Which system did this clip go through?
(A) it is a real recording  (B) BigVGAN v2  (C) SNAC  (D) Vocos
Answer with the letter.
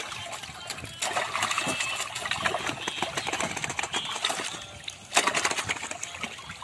A